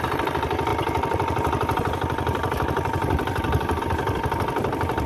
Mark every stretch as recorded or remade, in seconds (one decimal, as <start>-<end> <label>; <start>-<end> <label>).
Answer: 0.0-0.7 recorded; 0.7-3.8 remade; 3.8-5.1 recorded